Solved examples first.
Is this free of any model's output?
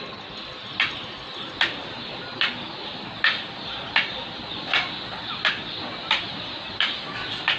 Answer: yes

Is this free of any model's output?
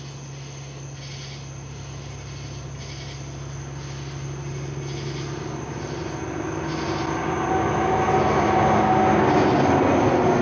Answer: yes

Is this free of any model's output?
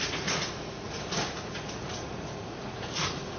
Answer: no